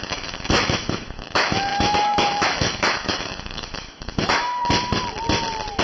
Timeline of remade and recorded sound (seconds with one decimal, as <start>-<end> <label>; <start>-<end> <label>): 0.0-4.6 remade; 4.6-5.8 recorded